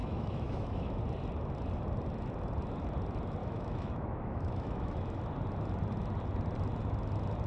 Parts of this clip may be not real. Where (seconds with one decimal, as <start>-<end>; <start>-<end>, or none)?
0.0-1.0; 3.4-5.2